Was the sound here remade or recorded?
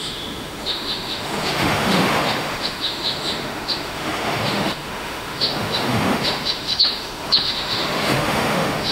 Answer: remade